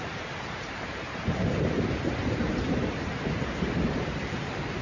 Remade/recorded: remade